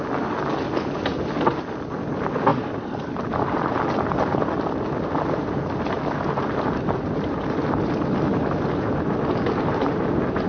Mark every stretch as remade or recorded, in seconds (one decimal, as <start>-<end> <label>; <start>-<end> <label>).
0.0-10.5 recorded